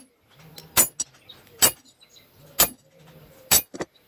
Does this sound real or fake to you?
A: real